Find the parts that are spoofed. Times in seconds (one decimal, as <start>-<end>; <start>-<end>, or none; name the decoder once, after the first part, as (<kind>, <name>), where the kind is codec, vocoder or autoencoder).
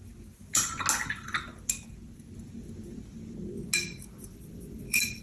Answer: 4.3-5.2 (vocoder, BigVGAN v2)